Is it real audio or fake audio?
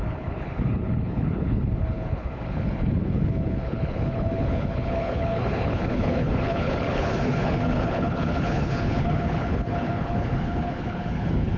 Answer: fake